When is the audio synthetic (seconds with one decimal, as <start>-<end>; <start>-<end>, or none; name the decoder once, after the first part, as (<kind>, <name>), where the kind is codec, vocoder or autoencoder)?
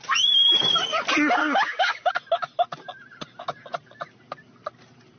1.4-2.1 (codec, DAC)